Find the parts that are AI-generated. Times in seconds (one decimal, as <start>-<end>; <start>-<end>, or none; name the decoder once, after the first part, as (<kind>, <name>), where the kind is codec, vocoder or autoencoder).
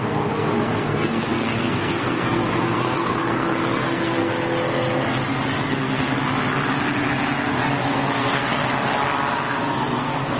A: 0.0-4.3 (codec, SNAC); 5.7-6.2; 7.9-8.6; 9.6-10.4